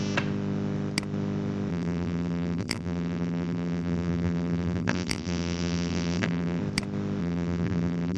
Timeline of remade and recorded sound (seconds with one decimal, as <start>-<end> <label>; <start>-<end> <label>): 0.0-1.7 recorded; 1.7-6.6 remade; 6.6-7.2 recorded; 7.2-8.2 remade